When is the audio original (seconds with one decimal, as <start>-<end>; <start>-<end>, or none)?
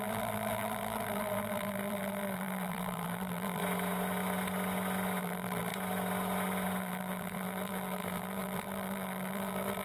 3.6-5.2; 5.7-6.8